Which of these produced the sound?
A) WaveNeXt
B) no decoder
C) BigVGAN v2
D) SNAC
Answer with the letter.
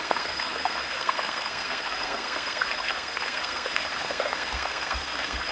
D